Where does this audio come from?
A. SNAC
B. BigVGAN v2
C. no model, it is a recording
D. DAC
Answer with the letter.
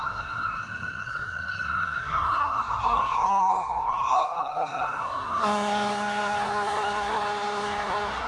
A